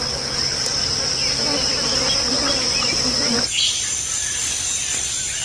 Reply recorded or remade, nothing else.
recorded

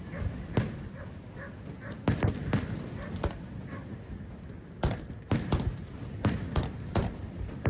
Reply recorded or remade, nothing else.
recorded